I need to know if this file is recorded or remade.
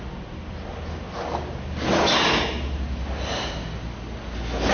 recorded